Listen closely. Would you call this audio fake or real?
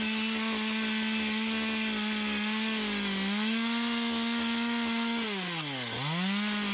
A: real